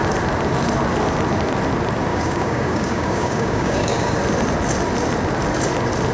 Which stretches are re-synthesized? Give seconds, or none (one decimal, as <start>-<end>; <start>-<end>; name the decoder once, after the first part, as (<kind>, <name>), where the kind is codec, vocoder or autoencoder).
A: 2.1-4.2 (codec, DAC)